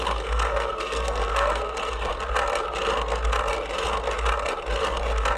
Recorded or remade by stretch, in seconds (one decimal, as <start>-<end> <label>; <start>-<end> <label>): 0.0-2.1 remade; 2.1-5.4 recorded